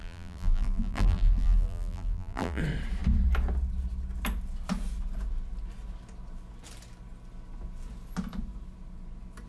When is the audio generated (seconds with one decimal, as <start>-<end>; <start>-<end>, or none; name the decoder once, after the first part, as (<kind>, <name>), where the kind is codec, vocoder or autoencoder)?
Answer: 0.0-2.6 (vocoder, BigVGAN v2)